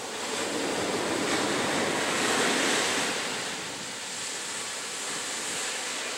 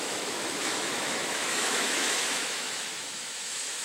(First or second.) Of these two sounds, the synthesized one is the second